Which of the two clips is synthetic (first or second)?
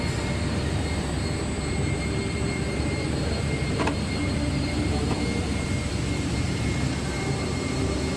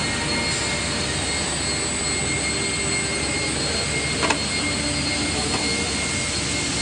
first